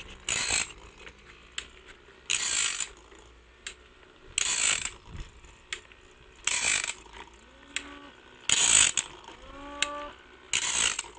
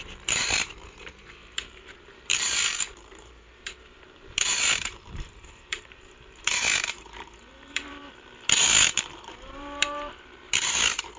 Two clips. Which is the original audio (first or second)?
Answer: first